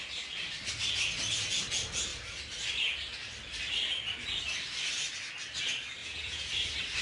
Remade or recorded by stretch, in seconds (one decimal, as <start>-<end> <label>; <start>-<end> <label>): 0.0-6.0 recorded; 6.0-6.5 remade; 6.5-7.0 recorded